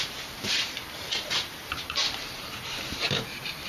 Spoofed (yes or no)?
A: yes